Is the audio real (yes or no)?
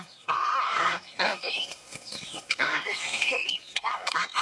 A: no